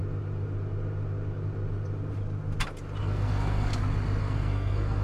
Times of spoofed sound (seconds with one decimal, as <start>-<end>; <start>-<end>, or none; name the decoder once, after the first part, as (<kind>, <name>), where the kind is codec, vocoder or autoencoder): 3.0-3.7 (codec, SNAC); 4.2-5.0